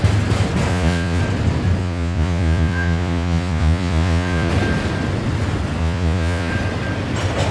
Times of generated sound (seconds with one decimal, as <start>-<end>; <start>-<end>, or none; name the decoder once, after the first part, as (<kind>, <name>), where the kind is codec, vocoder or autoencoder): 0.7-1.2 (vocoder, Vocos); 1.8-4.5; 5.8-6.5